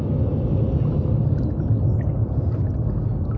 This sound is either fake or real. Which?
real